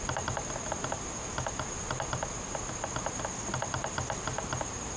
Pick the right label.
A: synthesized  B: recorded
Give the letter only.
B